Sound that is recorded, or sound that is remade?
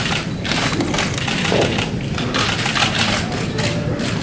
recorded